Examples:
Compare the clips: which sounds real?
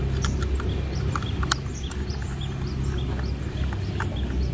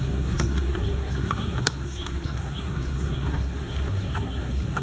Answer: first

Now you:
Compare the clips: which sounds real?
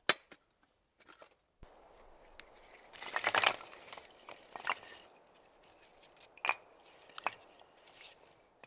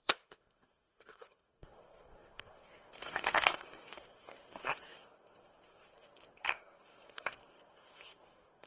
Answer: first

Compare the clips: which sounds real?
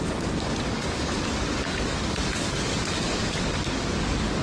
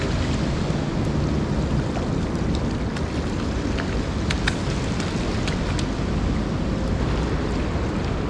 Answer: second